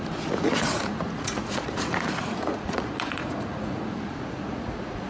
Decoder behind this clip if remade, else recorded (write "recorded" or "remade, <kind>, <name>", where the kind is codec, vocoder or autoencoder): remade, vocoder, Vocos